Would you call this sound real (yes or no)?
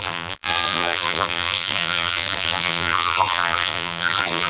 no